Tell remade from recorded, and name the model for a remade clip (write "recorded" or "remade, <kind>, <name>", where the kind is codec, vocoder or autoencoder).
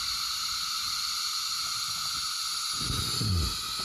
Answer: recorded